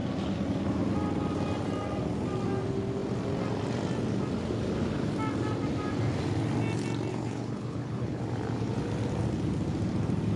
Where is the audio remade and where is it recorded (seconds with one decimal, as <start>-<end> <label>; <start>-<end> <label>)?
0.0-7.1 recorded; 7.1-8.2 remade; 8.2-10.4 recorded